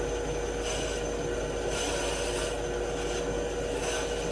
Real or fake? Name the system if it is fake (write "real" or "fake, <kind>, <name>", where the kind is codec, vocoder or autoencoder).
real